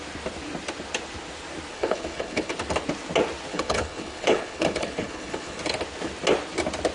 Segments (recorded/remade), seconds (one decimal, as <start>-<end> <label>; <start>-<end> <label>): 0.0-1.7 recorded; 1.7-2.5 remade; 2.5-3.5 recorded; 3.5-5.6 remade; 5.6-6.9 recorded